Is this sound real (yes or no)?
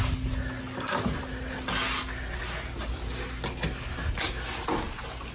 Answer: yes